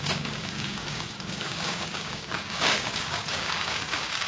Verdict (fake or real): fake